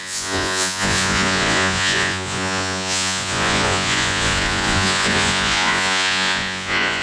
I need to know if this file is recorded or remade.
remade